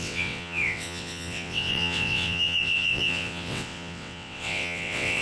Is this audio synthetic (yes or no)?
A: yes